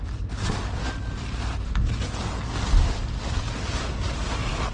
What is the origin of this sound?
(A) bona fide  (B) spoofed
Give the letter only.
A